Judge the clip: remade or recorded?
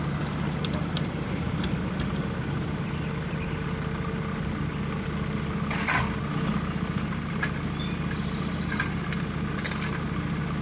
recorded